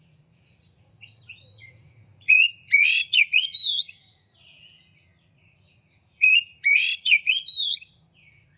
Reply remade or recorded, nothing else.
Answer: remade